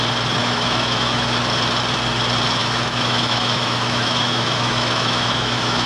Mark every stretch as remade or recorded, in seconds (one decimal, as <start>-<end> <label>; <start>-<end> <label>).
0.0-0.4 recorded; 0.4-1.4 remade; 1.4-2.6 recorded; 2.6-5.9 remade